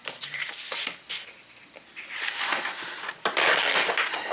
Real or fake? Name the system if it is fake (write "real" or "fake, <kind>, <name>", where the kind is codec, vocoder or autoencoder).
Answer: real